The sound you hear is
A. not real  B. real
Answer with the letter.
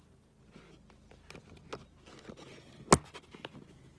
B